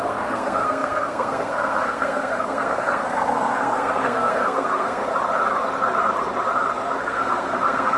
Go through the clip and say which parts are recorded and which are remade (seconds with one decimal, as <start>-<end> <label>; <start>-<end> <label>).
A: 0.0-5.0 remade; 5.0-7.0 recorded; 7.0-8.0 remade